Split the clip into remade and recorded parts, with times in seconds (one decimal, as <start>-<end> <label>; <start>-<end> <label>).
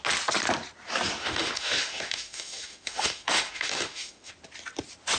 0.0-1.2 recorded; 1.2-4.3 remade; 4.3-5.2 recorded